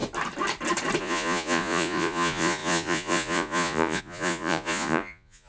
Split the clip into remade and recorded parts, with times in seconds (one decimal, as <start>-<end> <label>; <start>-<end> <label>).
0.0-1.0 recorded; 1.0-5.5 remade